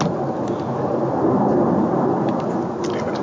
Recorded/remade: recorded